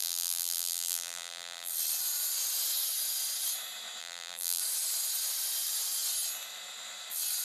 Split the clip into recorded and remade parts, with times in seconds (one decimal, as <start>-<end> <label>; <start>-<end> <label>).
0.0-1.7 remade; 1.7-4.0 recorded; 4.0-4.6 remade; 4.6-7.4 recorded